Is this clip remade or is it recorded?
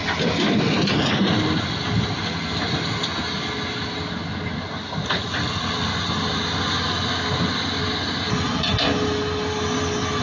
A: recorded